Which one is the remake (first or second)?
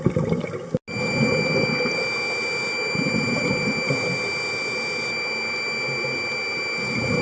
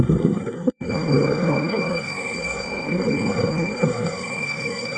second